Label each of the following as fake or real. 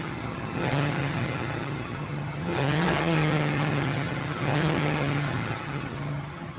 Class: fake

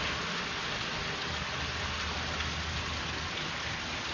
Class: real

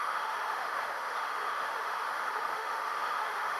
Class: fake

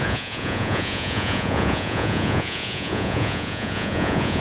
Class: fake